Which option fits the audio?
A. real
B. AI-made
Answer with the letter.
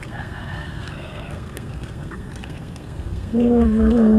B